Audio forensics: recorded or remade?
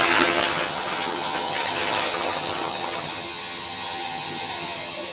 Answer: remade